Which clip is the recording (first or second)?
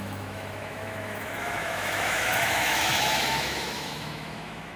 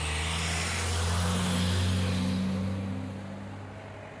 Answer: second